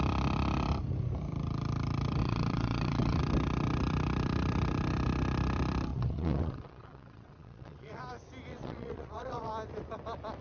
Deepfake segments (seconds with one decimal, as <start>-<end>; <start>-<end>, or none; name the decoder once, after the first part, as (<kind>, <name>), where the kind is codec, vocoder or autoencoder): 2.2-3.2 (vocoder, WaveNeXt); 5.9-8.0; 8.5-9.5